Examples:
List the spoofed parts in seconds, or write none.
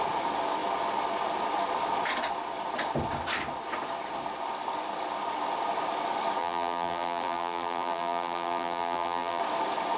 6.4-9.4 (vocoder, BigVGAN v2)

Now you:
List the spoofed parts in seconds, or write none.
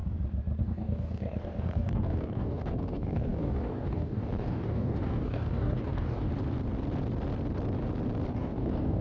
0.6-6.3 (codec, DAC); 8.3-9.0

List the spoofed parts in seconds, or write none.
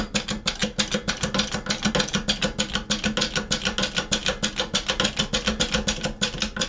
none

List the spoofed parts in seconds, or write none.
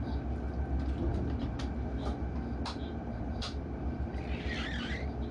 none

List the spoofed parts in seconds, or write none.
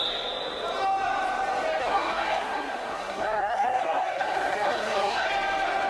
1.8-5.3 (codec, SNAC)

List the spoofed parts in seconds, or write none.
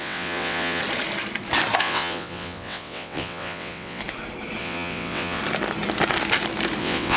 0.0-0.8 (vocoder, WaveNeXt); 1.8-4.0; 4.6-5.4; 6.8-7.2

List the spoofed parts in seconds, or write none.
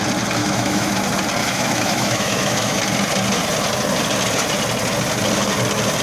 0.4-0.9 (autoencoder, DAC-VAE); 1.4-2.8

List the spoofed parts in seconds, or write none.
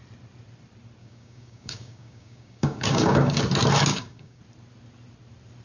1.0-3.4 (codec, DAC); 3.9-4.4